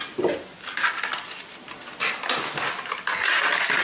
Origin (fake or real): real